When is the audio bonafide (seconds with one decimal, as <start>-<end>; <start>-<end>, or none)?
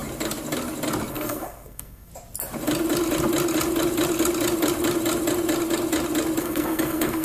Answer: 0.0-1.1; 2.1-6.4